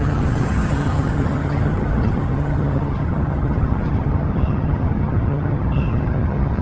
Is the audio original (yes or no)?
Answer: no